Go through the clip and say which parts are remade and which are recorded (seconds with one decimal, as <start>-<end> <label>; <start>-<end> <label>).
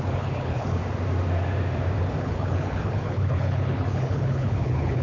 0.0-0.8 remade; 0.8-2.2 recorded; 2.2-5.0 remade